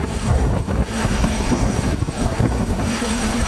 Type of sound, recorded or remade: remade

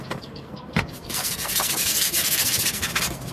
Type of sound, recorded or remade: remade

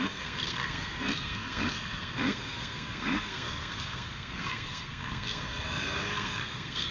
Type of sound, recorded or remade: remade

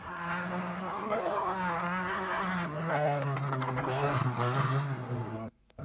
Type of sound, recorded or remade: remade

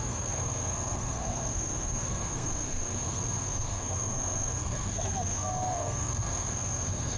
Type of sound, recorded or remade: remade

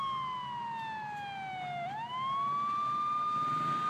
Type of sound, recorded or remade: recorded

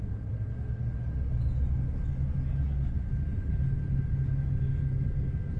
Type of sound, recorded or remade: recorded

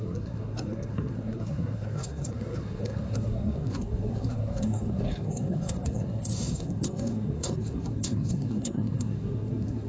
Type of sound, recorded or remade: remade